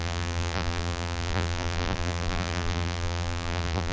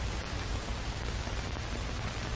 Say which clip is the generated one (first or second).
first